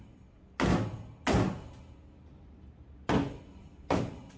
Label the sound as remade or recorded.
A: recorded